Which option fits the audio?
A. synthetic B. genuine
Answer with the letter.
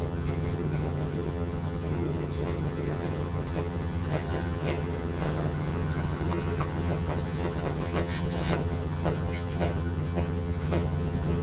A